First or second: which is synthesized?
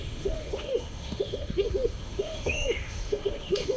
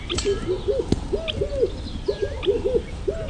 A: first